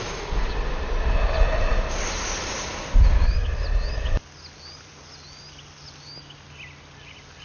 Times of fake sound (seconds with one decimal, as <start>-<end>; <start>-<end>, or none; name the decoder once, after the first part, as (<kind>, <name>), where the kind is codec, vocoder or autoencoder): none